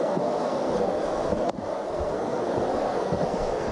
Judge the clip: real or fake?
fake